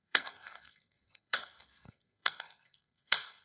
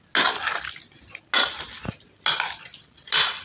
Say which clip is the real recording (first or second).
second